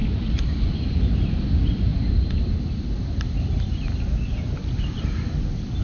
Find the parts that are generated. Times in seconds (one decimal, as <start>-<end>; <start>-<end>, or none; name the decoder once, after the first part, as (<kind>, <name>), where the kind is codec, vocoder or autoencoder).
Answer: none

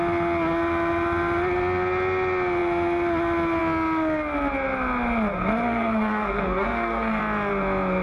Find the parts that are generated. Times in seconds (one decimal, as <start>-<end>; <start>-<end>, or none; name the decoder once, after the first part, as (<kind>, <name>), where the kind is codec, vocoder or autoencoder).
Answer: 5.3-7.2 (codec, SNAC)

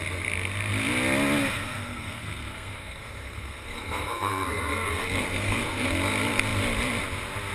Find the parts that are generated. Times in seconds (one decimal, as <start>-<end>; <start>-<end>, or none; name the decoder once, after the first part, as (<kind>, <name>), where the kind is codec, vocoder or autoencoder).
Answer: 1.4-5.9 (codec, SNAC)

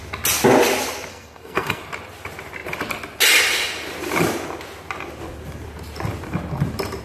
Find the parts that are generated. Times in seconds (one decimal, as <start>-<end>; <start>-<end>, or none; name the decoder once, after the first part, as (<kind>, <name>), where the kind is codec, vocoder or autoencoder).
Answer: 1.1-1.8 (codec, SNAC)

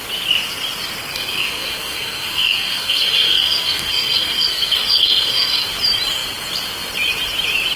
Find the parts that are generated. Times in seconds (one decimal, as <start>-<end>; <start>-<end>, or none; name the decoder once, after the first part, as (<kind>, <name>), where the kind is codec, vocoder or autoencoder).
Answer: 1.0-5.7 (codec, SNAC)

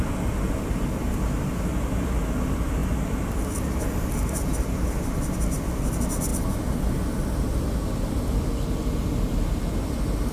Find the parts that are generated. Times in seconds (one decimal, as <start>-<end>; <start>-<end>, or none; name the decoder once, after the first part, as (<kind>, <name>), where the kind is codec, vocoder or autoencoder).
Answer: none

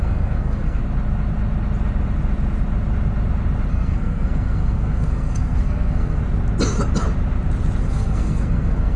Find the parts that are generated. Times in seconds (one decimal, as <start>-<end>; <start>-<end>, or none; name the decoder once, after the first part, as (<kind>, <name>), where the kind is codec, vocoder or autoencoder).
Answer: 0.0-0.8 (codec, SNAC); 3.7-6.2; 7.8-9.0

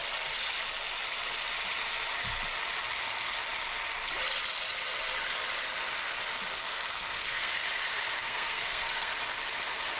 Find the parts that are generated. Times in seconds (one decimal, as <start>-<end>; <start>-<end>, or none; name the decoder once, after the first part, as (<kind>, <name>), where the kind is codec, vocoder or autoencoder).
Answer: 6.6-7.5 (codec, SNAC); 8.2-9.1